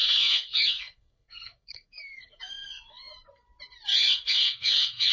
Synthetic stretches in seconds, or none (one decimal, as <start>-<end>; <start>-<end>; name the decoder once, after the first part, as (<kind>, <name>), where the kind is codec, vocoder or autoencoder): 0.0-3.1 (codec, SNAC); 3.9-5.1